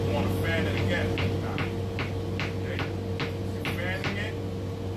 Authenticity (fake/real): real